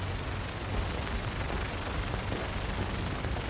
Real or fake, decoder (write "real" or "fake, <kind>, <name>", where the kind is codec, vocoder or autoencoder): real